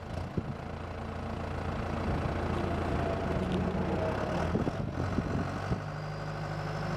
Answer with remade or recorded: recorded